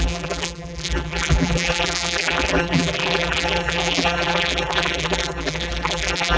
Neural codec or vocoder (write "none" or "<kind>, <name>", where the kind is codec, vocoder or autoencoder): vocoder, BigVGAN v2